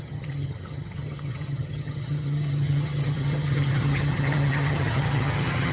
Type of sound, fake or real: fake